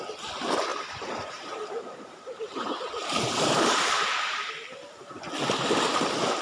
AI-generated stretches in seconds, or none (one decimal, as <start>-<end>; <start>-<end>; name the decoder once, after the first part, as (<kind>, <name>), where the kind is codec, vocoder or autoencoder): 0.7-4.5 (vocoder, BigVGAN v2)